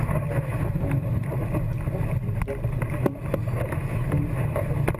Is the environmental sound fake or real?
real